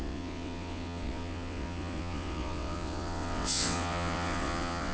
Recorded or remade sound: remade